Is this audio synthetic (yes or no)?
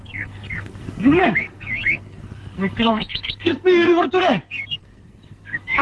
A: yes